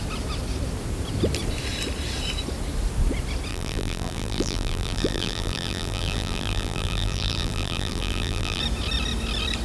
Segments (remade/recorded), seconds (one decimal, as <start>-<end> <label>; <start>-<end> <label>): 0.0-3.5 recorded; 3.5-8.6 remade; 8.6-9.6 recorded